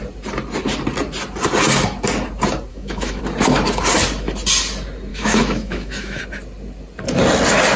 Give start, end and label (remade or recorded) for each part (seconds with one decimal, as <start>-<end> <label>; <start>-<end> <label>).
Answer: 0.0-2.7 recorded; 2.7-3.2 remade; 3.2-5.1 recorded; 5.1-6.2 remade; 6.2-7.8 recorded

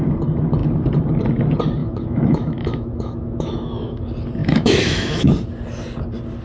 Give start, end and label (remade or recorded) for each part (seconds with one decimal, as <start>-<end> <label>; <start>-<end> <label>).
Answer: 0.0-1.8 recorded; 1.8-4.0 remade; 4.0-4.4 recorded; 4.4-5.3 remade; 5.3-6.4 recorded

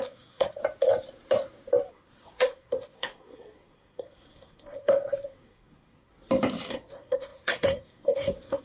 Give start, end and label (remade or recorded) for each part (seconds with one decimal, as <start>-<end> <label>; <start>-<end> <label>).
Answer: 0.0-0.6 remade; 0.6-1.9 recorded; 1.9-6.1 remade; 6.1-6.7 recorded; 6.7-8.6 remade

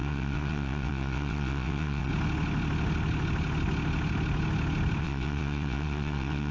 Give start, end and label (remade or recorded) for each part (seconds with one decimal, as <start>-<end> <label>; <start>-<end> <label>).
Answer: 0.0-2.1 remade; 2.1-5.0 recorded; 5.0-6.5 remade